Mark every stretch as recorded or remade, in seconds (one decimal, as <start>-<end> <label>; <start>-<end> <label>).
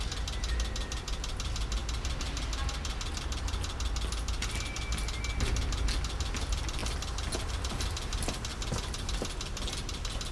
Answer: 0.0-10.3 recorded